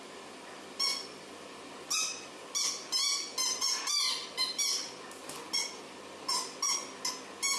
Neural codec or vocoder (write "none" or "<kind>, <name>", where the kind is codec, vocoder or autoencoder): none